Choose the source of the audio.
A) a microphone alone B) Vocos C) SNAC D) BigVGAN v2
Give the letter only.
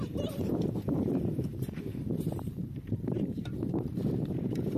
D